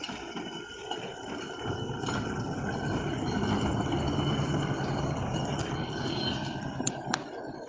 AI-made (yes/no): no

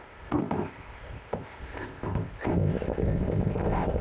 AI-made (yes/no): yes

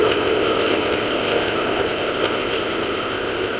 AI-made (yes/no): yes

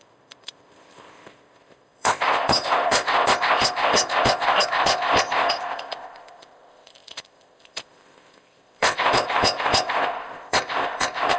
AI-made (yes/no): yes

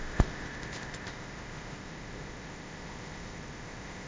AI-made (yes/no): yes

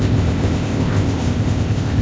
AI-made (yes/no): yes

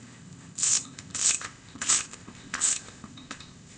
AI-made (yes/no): yes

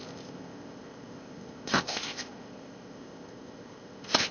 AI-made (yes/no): yes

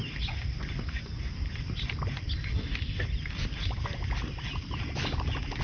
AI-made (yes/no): no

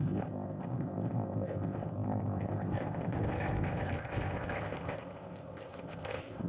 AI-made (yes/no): yes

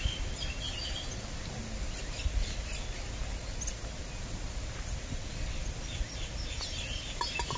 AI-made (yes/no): no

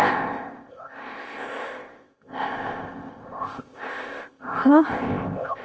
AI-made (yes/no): yes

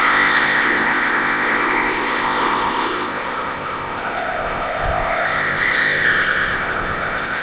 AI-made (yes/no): yes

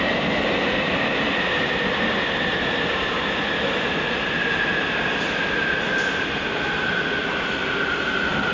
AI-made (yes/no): no